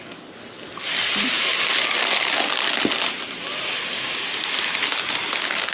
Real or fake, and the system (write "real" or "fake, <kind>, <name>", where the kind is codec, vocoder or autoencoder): real